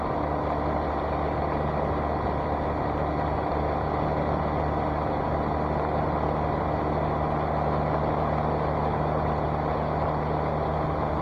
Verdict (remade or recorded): recorded